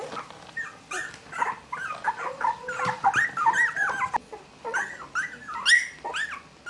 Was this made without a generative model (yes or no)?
yes